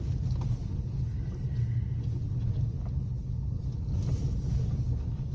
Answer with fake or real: real